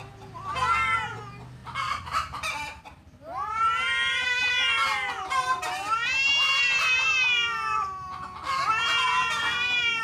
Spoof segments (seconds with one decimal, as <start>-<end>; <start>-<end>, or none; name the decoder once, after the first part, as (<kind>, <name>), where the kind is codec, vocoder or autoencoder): 1.6-4.5 (vocoder, BigVGAN v2)